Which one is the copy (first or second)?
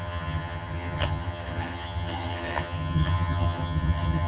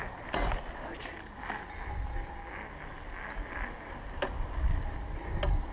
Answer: first